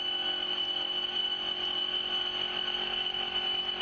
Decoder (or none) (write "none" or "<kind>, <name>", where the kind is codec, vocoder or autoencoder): none